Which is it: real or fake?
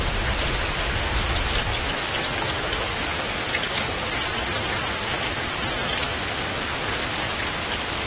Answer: real